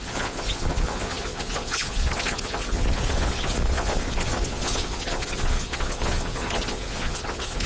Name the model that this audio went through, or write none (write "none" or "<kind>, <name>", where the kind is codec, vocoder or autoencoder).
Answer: vocoder, Vocos